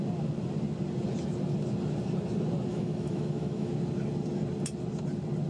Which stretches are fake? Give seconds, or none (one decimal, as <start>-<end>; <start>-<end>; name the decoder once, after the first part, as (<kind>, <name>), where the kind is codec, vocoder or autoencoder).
2.7-3.7 (autoencoder, DAC-VAE)